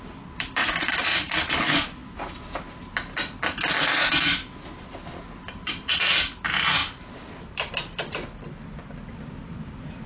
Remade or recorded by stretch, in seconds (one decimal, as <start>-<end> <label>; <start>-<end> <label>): 0.0-0.6 recorded; 0.6-1.3 remade; 1.3-10.1 recorded